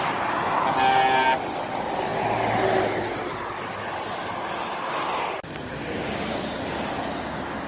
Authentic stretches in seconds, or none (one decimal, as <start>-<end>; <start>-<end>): 0.0-7.7